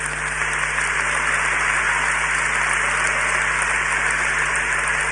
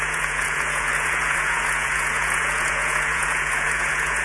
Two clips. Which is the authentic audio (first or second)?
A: first